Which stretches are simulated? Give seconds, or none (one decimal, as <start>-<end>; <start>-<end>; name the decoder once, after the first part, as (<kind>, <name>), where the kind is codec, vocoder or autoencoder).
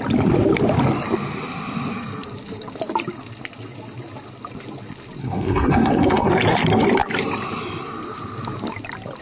5.2-6.3 (codec, SNAC)